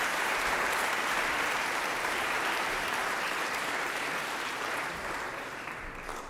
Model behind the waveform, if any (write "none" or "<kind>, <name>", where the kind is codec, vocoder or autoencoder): vocoder, BigVGAN v2